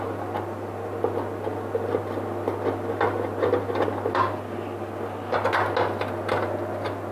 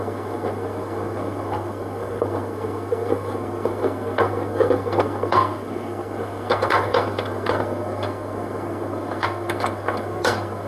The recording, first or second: first